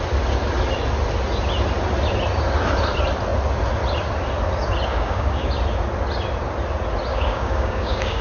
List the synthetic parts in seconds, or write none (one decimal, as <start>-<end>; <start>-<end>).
4.9-5.5; 7.1-8.2